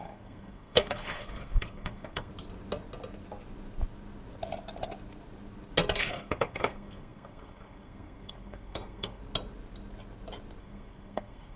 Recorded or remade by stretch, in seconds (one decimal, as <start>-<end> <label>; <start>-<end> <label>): 0.0-2.3 remade; 2.3-6.0 recorded; 6.0-9.2 remade; 9.2-10.6 recorded; 10.6-11.6 remade